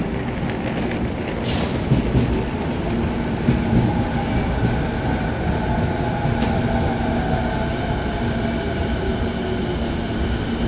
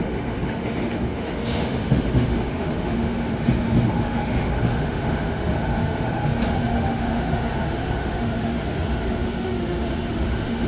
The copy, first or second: second